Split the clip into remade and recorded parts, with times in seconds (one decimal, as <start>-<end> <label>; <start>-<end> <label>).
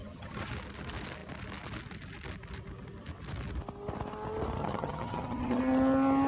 0.0-0.5 remade; 0.5-4.6 recorded; 4.6-5.6 remade; 5.6-6.3 recorded